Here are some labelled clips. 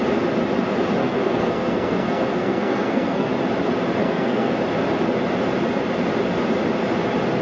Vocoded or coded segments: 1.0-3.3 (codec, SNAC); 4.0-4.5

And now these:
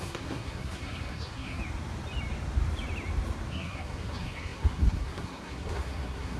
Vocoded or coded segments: 0.0-1.6 (codec, SNAC); 3.5-6.4

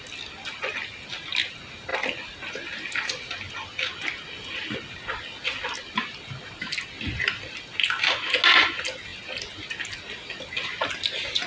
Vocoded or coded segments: none

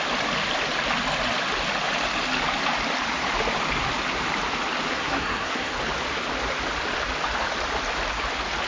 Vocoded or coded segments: 4.9-5.8 (codec, SNAC)

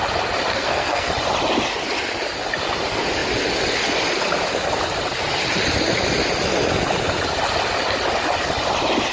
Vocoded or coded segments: 0.5-1.1 (codec, SNAC)

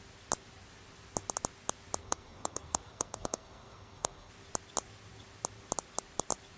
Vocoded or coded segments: 2.0-4.3 (codec, SNAC)

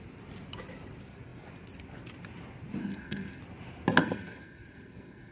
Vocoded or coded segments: 2.8-3.4 (codec, SNAC); 4.0-5.3

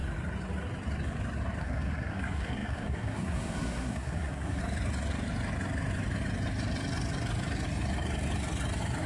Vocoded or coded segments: 1.6-4.6 (codec, SNAC)